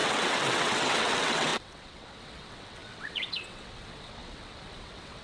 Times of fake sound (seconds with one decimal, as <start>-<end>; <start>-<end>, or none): 0.0-5.2